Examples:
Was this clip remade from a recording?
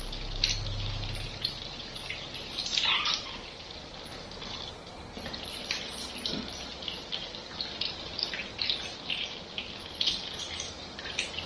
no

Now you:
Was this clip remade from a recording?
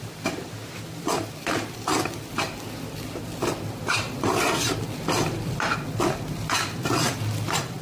yes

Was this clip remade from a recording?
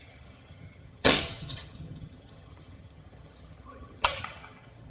yes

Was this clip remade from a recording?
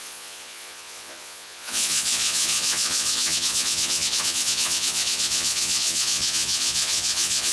yes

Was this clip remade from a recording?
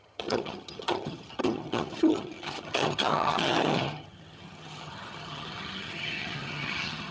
yes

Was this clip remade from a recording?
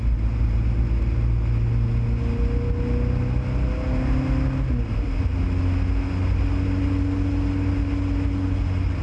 no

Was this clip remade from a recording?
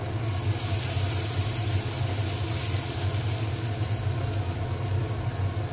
no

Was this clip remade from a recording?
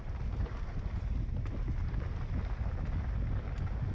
no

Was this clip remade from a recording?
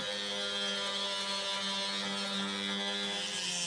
no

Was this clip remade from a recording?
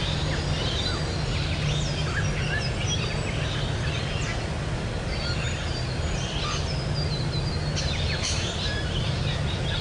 no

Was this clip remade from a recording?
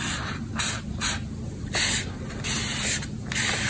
no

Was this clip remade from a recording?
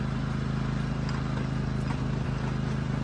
no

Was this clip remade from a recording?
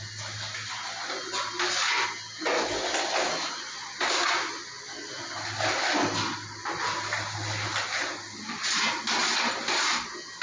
no